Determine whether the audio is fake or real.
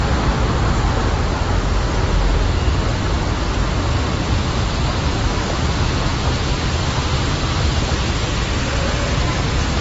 real